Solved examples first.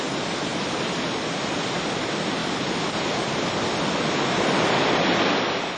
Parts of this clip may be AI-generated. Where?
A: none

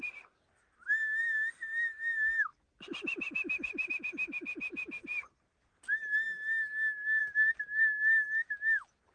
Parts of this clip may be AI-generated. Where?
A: none

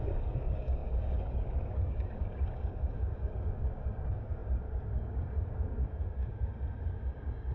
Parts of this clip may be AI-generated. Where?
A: 0.0-7.5 (codec, DAC)

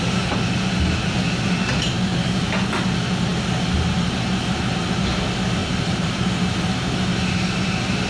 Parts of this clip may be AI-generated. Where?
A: 5.6-6.3 (vocoder, BigVGAN v2)